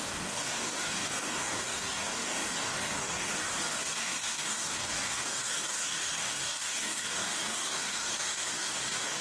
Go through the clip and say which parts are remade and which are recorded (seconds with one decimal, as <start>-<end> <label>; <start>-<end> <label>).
0.0-9.2 remade